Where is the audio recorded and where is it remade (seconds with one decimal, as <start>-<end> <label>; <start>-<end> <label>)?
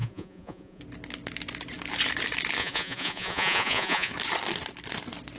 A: 0.0-0.8 remade; 0.8-2.6 recorded; 2.6-4.1 remade; 4.1-5.4 recorded